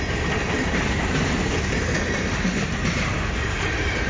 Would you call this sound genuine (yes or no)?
yes